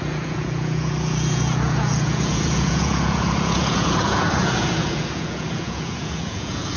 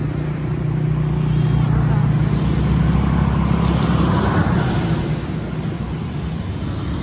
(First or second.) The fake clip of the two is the first